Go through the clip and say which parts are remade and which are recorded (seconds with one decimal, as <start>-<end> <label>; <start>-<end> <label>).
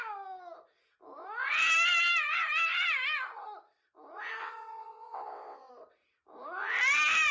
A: 0.0-4.4 recorded; 4.4-5.7 remade; 5.7-7.3 recorded